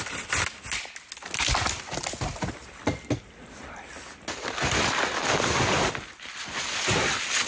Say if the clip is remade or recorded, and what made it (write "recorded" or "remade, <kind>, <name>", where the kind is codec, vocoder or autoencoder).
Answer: recorded